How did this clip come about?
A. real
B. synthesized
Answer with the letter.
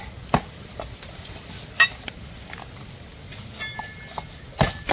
A